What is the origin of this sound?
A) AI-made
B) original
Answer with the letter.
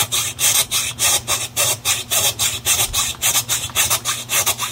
A